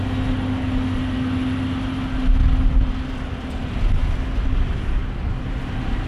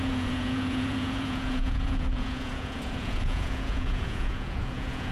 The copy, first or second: second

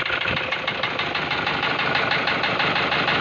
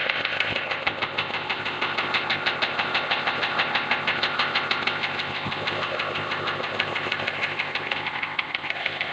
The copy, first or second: second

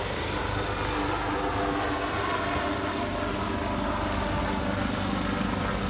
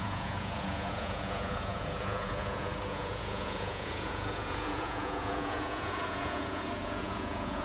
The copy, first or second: second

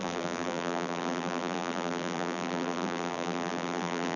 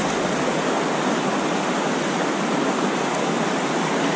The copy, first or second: first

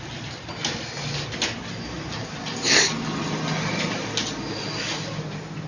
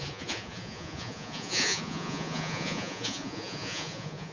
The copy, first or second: second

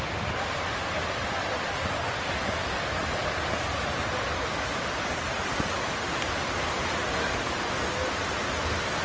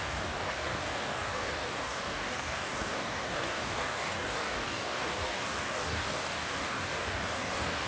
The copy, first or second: second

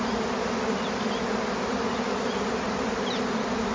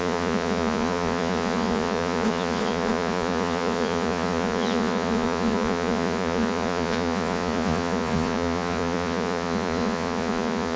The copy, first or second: second